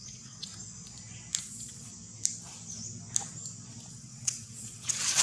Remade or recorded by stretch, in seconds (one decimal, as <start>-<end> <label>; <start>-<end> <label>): 0.0-0.5 remade; 0.5-1.4 recorded; 1.4-1.9 remade; 1.9-3.9 recorded; 3.9-5.2 remade